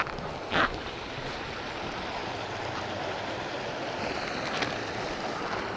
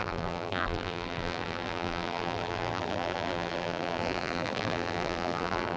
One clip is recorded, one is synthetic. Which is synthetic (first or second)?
second